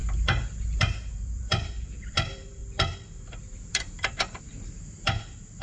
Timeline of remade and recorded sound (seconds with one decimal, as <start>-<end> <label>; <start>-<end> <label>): 0.0-2.6 remade; 2.6-3.7 recorded; 3.7-5.6 remade